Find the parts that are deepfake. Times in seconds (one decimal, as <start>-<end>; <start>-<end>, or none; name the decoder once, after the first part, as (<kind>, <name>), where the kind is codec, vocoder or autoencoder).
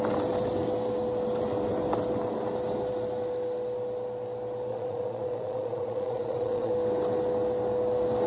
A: 4.7-6.7 (vocoder, Vocos)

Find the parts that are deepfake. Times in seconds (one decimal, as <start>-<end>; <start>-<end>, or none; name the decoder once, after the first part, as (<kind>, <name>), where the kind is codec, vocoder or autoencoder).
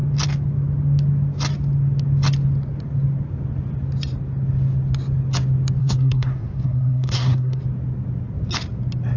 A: 5.8-7.6 (codec, SNAC)